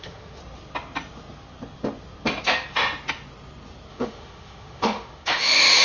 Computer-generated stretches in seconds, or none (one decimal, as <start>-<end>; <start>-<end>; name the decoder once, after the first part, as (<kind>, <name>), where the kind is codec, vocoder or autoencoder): 0.0-0.4 (autoencoder, DAC-VAE); 3.9-5.8